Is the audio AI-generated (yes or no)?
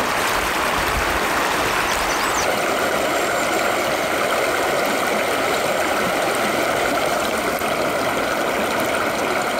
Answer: no